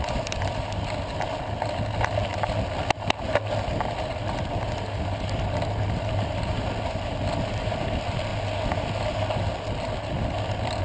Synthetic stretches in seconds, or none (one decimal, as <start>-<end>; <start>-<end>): none